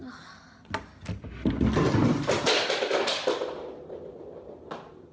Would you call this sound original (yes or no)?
yes